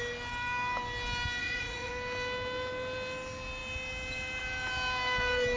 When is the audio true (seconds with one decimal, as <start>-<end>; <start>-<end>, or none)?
0.0-1.4; 1.9-5.6